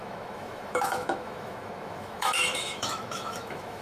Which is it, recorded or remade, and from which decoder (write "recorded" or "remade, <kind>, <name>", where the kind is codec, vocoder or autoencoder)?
remade, autoencoder, DAC-VAE